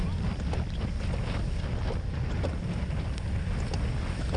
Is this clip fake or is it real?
real